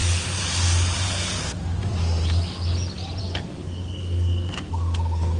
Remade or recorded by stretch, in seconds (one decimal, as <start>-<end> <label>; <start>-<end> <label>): 0.0-3.2 recorded; 3.2-5.4 remade